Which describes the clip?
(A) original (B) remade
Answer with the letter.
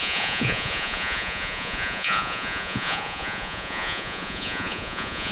B